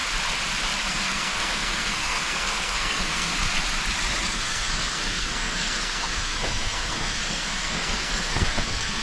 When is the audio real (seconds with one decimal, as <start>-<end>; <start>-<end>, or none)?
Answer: 0.0-0.9; 3.3-4.2